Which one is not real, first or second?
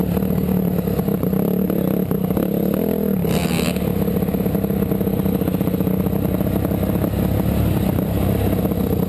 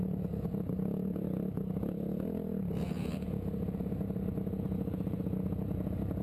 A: second